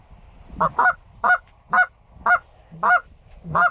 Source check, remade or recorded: recorded